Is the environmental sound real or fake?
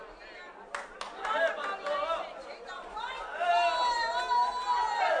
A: real